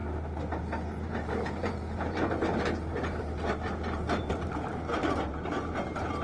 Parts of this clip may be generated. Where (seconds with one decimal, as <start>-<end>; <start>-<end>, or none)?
1.1-6.2